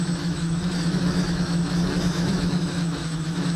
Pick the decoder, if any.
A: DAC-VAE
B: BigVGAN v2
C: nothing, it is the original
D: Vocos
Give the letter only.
A